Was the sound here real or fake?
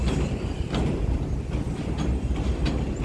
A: real